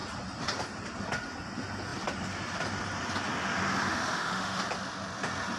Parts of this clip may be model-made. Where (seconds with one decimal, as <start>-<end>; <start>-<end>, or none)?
3.9-4.6